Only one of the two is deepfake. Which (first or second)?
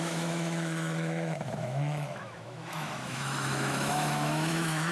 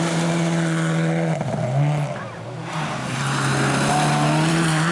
first